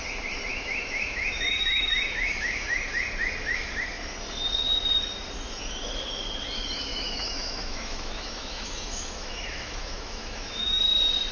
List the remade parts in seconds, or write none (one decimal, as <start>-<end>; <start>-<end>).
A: 0.5-2.8; 6.9-10.8